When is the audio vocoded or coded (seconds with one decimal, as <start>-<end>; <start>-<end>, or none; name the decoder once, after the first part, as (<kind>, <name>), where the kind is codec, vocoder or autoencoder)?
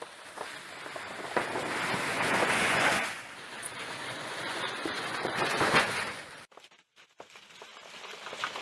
2.1-6.3 (vocoder, Vocos)